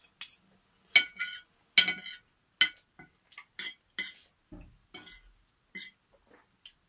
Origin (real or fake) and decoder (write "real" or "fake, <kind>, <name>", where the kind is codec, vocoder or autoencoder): real